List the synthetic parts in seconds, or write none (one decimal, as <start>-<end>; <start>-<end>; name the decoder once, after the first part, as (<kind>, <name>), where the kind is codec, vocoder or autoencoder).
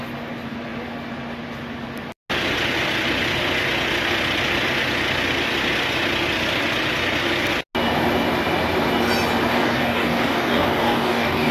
9.5-11.5 (codec, DAC)